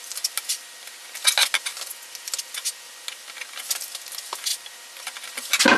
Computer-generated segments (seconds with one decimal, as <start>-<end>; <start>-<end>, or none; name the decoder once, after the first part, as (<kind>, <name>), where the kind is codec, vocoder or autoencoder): none